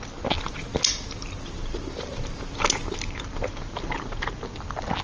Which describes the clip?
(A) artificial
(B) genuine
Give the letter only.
B